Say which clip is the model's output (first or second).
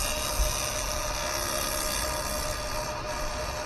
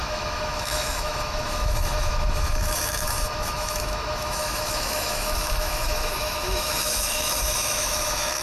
second